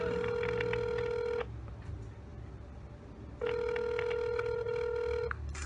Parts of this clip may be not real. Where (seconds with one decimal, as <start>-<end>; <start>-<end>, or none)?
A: 2.3-2.8